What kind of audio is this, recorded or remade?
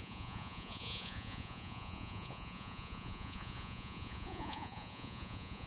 remade